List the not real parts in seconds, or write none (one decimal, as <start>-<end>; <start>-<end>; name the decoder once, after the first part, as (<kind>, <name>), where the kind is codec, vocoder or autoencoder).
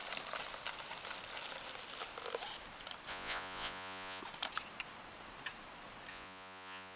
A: 3.1-4.2 (vocoder, Vocos); 6.1-7.0